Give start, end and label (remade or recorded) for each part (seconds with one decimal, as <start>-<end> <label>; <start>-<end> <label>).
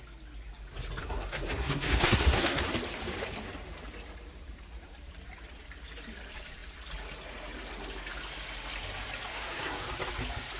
0.0-1.0 recorded; 1.0-2.6 remade; 2.6-9.3 recorded; 9.3-9.8 remade; 9.8-10.6 recorded